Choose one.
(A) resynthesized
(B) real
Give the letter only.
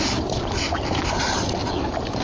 B